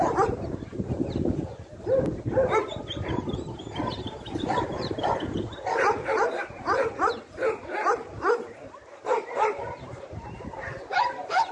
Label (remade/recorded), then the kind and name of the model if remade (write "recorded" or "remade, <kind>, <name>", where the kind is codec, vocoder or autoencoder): remade, vocoder, BigVGAN v2